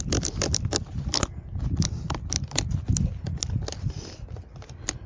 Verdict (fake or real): real